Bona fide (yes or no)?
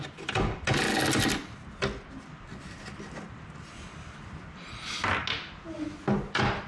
yes